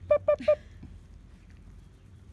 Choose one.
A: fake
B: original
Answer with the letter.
B